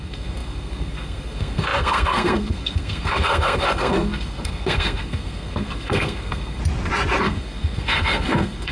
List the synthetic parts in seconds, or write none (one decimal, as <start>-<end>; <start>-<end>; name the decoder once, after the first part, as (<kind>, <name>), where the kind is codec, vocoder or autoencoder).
0.0-6.6 (codec, SNAC); 7.2-8.7